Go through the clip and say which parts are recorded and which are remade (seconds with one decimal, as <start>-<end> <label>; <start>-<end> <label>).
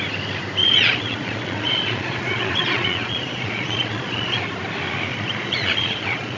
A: 0.0-0.6 recorded; 0.6-4.4 remade; 4.4-5.1 recorded; 5.1-6.4 remade